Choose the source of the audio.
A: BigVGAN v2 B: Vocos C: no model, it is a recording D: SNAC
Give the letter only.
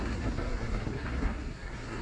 D